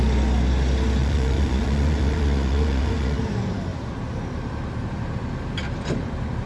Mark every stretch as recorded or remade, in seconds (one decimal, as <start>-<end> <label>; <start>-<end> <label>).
0.0-1.0 recorded; 1.0-3.2 remade; 3.2-6.5 recorded